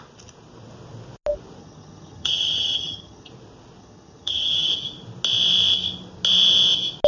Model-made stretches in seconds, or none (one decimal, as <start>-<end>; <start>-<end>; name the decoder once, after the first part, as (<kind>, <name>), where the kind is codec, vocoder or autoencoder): 1.6-3.3 (vocoder, HiFi-GAN); 3.8-4.7